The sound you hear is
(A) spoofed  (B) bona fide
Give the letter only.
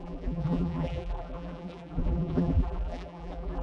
A